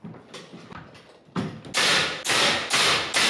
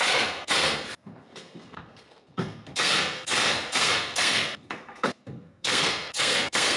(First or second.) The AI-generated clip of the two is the second